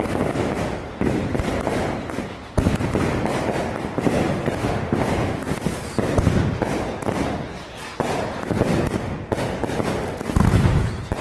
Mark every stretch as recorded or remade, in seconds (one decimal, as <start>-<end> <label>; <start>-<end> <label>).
0.0-4.6 recorded; 4.6-5.1 remade; 5.1-11.2 recorded